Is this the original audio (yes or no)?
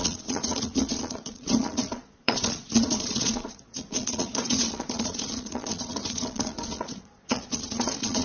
no